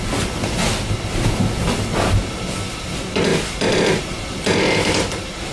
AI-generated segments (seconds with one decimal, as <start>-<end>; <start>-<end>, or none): 3.3-4.0